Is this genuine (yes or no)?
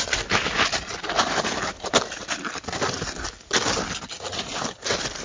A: yes